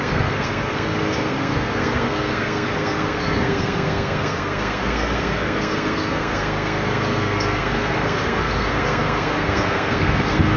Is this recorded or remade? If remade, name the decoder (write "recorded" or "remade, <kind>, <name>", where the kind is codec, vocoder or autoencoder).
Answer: remade, codec, SNAC